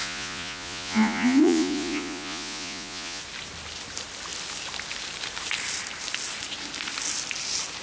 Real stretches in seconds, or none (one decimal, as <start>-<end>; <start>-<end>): 3.2-7.8